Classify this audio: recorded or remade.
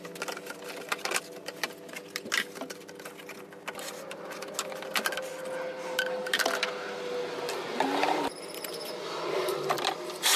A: recorded